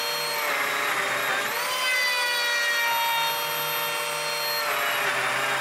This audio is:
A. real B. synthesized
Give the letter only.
A